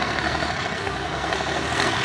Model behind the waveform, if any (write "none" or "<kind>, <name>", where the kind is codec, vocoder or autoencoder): codec, SNAC